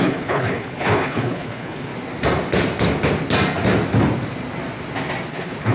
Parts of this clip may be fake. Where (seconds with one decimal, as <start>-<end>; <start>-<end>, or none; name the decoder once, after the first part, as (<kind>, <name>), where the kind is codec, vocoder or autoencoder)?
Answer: 0.0-1.9 (codec, HILCodec); 5.3-5.7